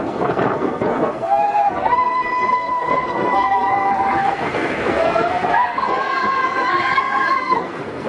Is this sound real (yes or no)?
no